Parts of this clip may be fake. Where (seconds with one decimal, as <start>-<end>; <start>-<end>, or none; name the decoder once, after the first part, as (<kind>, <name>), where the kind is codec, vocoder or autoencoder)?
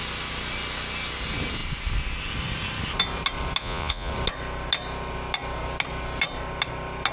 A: 3.6-4.1 (vocoder, Vocos)